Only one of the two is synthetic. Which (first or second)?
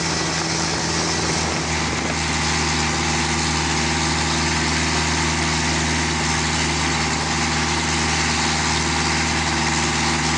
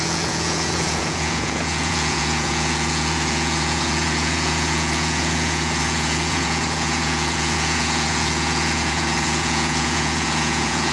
second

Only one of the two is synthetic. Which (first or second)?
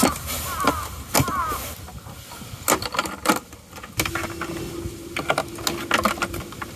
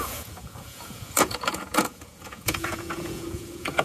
second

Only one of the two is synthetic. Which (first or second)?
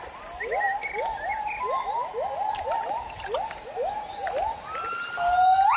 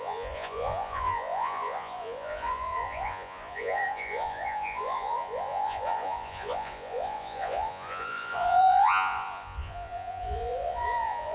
second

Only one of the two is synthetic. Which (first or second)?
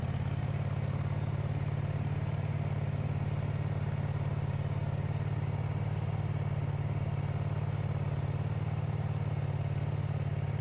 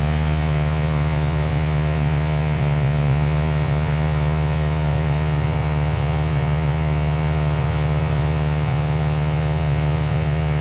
second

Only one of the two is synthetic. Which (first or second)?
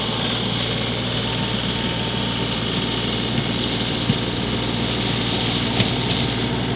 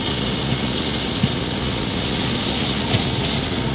second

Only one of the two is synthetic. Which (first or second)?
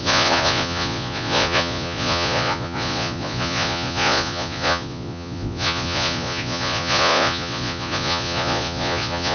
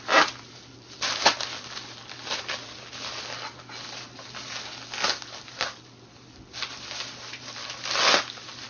first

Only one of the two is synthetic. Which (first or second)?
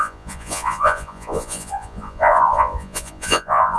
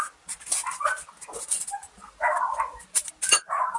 first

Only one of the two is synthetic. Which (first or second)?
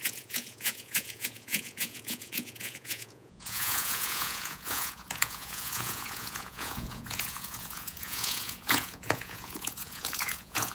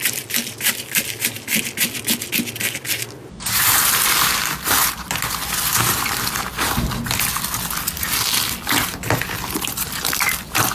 first